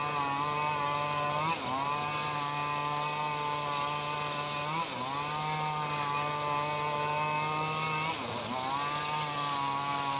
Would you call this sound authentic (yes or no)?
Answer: yes